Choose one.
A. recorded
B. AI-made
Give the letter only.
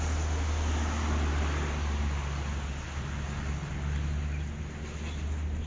A